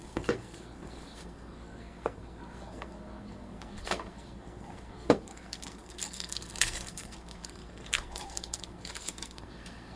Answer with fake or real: fake